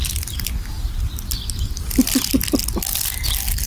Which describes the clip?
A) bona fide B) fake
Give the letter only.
A